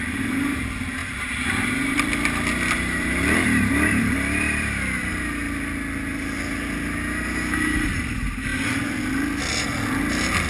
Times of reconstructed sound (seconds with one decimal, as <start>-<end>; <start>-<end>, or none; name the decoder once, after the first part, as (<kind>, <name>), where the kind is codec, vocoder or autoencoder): 1.0-5.1 (vocoder, BigVGAN v2); 8.5-9.4